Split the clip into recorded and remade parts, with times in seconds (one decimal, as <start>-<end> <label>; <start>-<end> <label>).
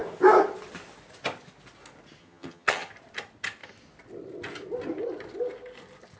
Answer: 0.0-2.2 recorded; 2.2-2.9 remade; 2.9-6.2 recorded